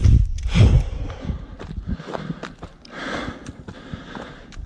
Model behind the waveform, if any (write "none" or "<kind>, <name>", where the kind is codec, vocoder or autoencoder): none